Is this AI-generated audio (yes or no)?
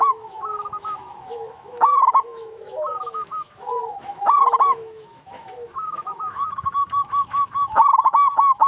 yes